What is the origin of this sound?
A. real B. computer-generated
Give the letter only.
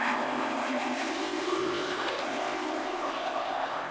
B